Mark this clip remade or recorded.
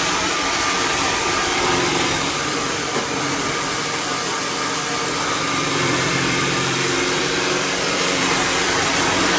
remade